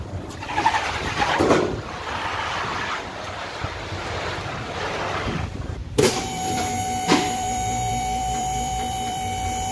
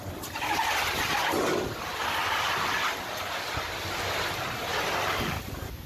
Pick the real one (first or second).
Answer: second